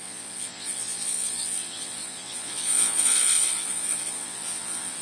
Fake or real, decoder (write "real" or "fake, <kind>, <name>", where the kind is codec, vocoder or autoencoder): fake, vocoder, Vocos